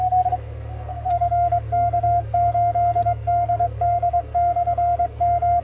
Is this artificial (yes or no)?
yes